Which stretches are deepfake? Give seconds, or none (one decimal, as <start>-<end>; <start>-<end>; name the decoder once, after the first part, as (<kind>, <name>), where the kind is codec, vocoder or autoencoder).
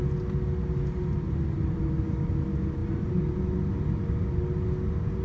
none